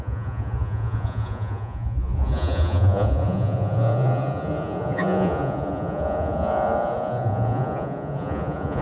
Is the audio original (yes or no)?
no